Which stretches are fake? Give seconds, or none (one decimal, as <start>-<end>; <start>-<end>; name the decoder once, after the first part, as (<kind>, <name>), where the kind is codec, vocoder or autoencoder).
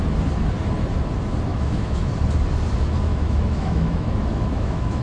1.5-2.1 (autoencoder, DAC-VAE); 3.1-5.0